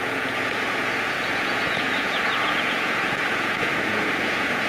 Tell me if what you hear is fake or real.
fake